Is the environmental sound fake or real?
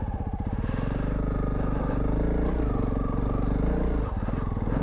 real